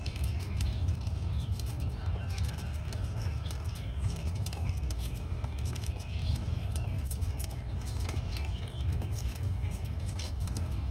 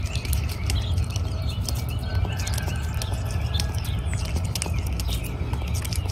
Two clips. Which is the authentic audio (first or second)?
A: second